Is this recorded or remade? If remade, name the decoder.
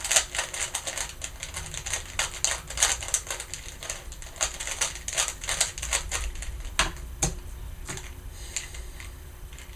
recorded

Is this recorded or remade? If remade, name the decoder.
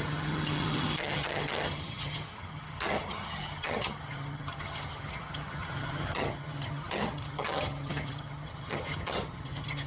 remade, vocoder, HiFi-GAN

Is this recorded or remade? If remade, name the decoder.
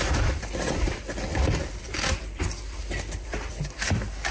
remade, vocoder, BigVGAN v2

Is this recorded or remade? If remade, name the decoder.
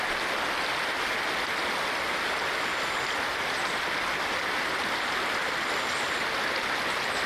recorded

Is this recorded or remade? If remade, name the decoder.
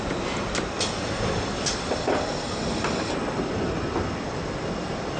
recorded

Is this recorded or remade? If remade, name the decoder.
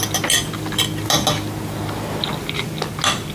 recorded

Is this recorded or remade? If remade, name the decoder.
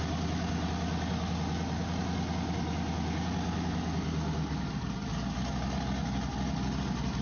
recorded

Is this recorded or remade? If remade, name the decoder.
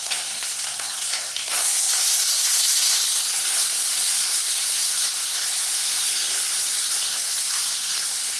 remade, codec, SNAC